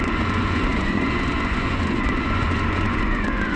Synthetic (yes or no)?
yes